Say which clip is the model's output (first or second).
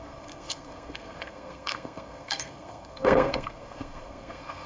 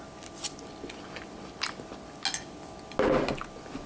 first